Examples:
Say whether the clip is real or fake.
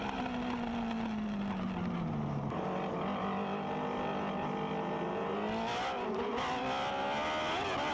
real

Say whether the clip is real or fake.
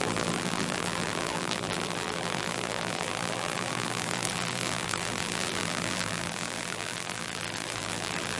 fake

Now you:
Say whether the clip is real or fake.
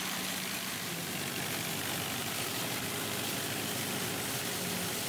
real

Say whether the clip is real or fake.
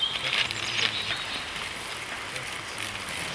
real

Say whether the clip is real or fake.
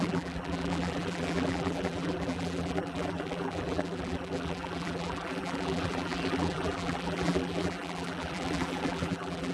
fake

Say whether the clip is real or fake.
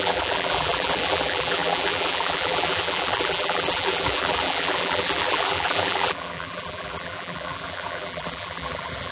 fake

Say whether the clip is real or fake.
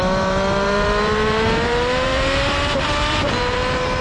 fake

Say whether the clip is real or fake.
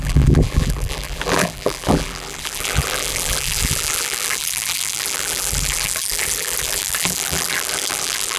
fake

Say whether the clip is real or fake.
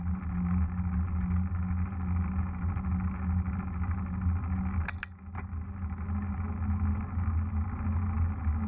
real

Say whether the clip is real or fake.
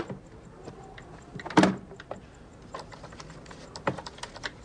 real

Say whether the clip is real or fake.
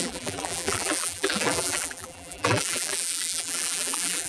fake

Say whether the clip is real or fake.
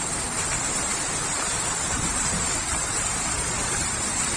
fake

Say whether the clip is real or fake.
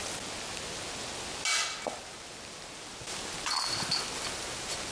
real